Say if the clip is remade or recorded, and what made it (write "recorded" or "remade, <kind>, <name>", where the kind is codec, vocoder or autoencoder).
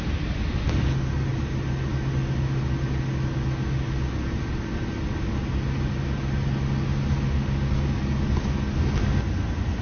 recorded